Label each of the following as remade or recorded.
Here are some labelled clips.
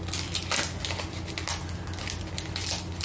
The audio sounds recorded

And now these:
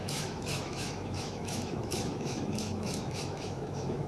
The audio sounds remade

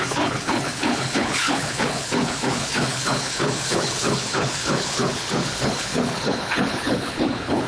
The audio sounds remade